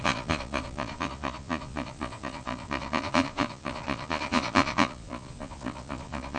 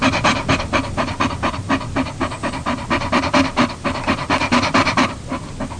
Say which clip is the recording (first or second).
second